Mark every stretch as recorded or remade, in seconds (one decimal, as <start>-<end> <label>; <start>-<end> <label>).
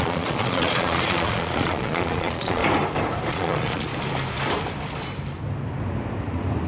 0.0-2.6 remade; 2.6-3.3 recorded; 3.3-3.9 remade; 3.9-6.7 recorded